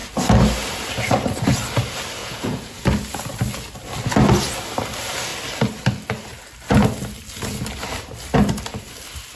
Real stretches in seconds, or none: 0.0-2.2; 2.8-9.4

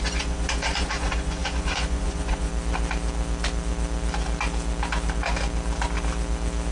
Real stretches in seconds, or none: 2.5-6.7

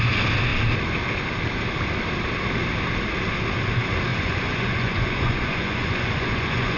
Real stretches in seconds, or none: 0.0-4.1

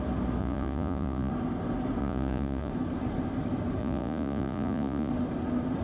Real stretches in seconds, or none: 0.0-0.4; 1.3-2.0; 2.7-3.8; 5.1-5.8

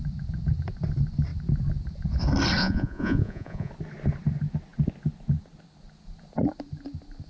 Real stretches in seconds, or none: 0.0-2.6; 3.7-7.3